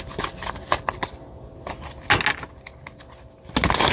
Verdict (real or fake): real